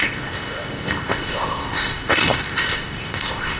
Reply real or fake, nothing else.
fake